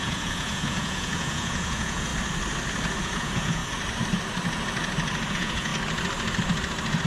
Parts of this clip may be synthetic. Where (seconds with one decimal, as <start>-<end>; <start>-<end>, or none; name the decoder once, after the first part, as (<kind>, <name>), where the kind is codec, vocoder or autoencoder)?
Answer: 0.0-2.1 (vocoder, Vocos); 3.0-3.6; 5.3-5.7